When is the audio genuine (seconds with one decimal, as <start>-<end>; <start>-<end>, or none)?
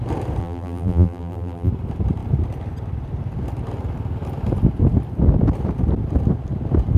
0.0-0.4; 1.7-7.0